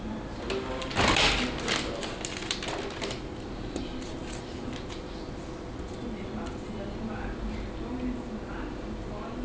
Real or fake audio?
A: real